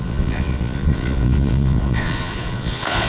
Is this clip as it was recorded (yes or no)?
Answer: no